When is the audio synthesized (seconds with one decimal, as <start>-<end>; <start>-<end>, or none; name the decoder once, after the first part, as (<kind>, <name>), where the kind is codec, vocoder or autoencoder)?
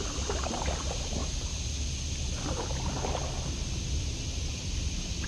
none